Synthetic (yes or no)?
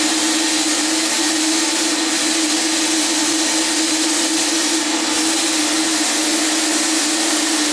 no